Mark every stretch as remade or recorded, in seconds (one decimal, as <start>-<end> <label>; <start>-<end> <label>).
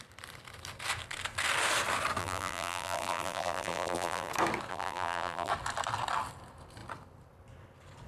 0.0-2.2 recorded; 2.2-4.3 remade; 4.3-4.7 recorded; 4.7-5.5 remade; 5.5-8.1 recorded